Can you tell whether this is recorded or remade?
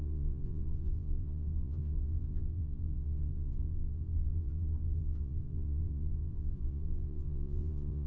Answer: remade